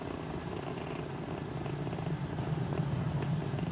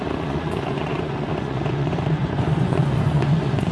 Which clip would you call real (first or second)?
first